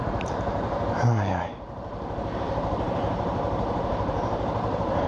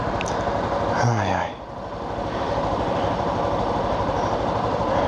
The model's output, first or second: first